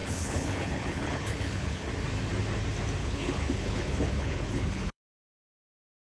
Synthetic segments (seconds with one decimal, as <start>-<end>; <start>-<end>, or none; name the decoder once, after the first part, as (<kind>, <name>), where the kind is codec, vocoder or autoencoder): 0.0-1.9 (codec, HILCodec); 3.0-6.0